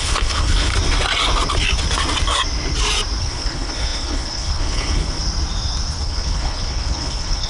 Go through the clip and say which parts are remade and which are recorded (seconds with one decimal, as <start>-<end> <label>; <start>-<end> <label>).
0.0-0.7 remade; 0.7-3.2 recorded; 3.2-5.2 remade; 5.2-6.0 recorded; 6.0-7.5 remade